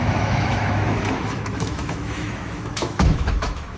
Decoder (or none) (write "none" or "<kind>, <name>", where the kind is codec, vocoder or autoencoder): autoencoder, DAC-VAE